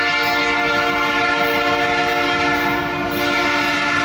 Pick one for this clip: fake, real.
real